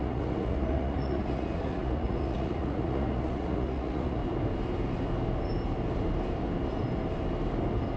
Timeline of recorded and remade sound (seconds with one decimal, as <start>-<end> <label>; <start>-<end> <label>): 0.0-4.2 remade; 4.2-8.0 recorded